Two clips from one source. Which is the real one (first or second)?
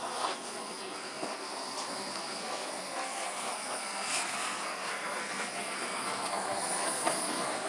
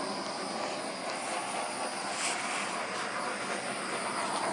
second